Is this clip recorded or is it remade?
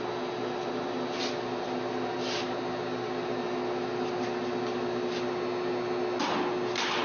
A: recorded